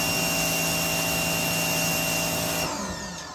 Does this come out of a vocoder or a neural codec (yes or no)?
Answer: no